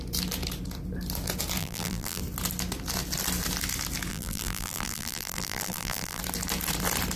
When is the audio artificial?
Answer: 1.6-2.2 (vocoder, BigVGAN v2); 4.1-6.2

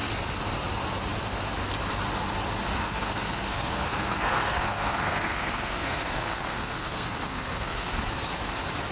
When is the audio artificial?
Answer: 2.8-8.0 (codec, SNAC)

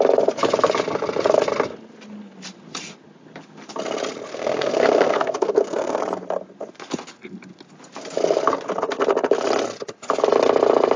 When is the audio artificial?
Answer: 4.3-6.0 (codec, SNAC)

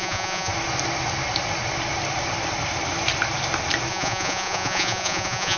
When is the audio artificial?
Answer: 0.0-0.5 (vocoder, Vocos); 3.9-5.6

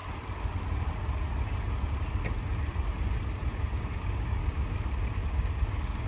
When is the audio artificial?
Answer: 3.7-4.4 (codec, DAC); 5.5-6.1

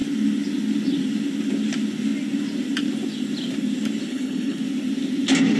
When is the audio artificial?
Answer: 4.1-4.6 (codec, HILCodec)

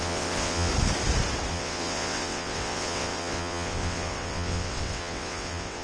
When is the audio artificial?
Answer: 0.0-0.7 (vocoder, WaveNeXt); 1.5-5.8